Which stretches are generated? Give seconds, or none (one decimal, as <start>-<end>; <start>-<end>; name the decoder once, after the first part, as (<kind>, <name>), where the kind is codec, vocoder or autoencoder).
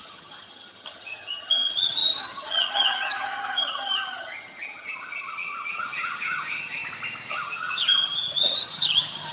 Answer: 0.0-6.8 (vocoder, HiFi-GAN); 7.3-9.3